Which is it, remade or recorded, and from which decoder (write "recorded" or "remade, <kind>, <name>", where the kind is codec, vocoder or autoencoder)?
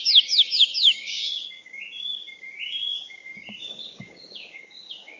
remade, codec, DAC